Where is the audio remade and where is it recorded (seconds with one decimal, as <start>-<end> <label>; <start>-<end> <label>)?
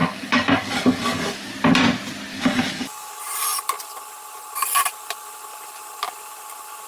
0.0-1.5 remade; 1.5-2.3 recorded; 2.3-3.1 remade; 3.1-6.9 recorded